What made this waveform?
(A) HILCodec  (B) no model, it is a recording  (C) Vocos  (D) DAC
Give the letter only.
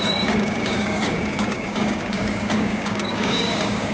D